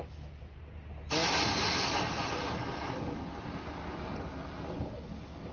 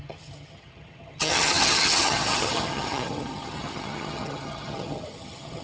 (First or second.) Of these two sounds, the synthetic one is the second